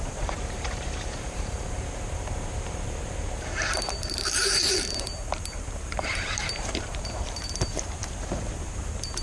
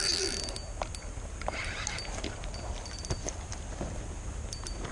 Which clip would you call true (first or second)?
second